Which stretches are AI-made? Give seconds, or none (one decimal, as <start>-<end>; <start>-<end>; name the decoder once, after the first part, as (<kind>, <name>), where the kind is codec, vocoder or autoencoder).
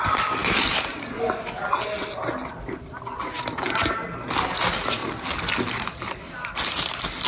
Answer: none